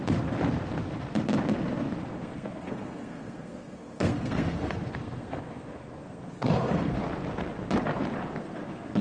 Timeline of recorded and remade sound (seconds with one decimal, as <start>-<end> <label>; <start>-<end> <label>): 0.0-2.1 recorded; 2.1-7.0 remade; 7.0-8.4 recorded; 8.4-9.0 remade